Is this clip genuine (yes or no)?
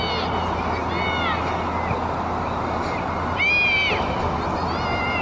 yes